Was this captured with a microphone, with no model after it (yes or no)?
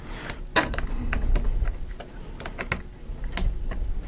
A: yes